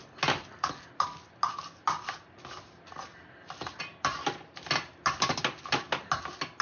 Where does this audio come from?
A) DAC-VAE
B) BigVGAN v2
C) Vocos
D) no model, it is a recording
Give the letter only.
D